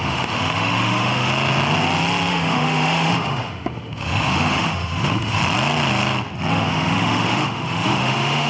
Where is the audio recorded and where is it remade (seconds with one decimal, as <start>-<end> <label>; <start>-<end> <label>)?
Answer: 0.0-1.3 remade; 1.3-2.3 recorded; 2.3-5.4 remade; 5.4-6.5 recorded; 6.5-8.5 remade